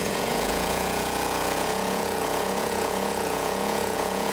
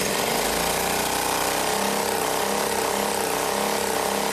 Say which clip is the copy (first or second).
first